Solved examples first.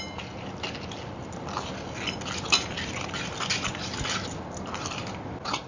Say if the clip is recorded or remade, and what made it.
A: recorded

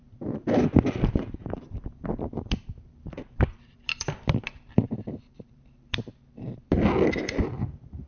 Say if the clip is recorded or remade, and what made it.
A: remade, vocoder, BigVGAN v2